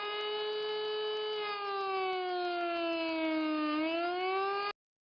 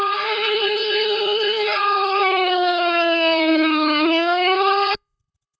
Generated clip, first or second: second